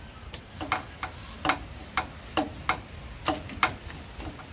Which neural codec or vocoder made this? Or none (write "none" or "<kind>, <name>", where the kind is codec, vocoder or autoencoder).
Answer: none